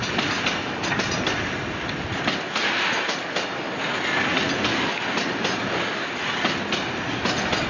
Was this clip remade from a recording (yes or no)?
no